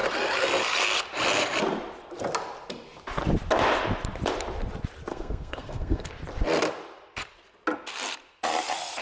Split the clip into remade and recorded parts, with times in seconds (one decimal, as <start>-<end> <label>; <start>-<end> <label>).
0.0-5.1 recorded; 5.1-6.1 remade; 6.1-9.0 recorded